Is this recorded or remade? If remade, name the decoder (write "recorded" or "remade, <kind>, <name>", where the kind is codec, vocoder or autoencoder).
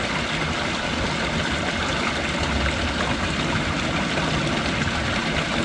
recorded